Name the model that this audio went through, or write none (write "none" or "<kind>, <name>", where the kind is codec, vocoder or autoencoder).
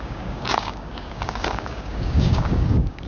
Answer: codec, DAC